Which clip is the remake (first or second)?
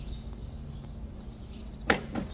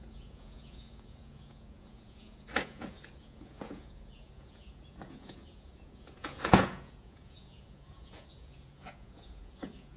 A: second